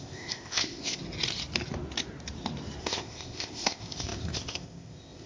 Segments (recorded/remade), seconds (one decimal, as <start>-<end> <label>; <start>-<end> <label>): 0.0-1.0 remade; 1.0-2.8 recorded; 2.8-5.3 remade